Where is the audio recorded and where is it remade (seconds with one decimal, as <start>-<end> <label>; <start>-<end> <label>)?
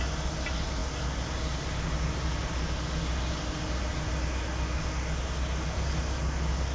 0.0-6.7 recorded